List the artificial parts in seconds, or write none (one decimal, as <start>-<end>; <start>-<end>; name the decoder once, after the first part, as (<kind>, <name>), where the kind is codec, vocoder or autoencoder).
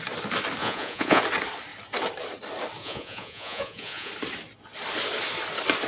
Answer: 0.6-1.2 (vocoder, Vocos); 2.8-4.1